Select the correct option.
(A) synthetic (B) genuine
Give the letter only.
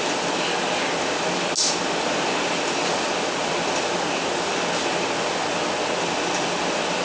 B